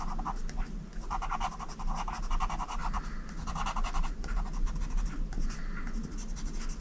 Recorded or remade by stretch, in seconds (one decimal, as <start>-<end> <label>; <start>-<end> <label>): 0.0-6.8 recorded